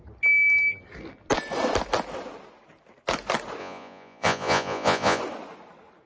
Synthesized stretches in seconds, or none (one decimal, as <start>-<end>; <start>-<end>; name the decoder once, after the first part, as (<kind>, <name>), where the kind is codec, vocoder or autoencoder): 3.6-5.2 (vocoder, Vocos)